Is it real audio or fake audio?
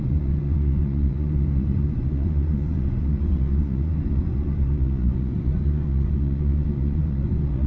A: fake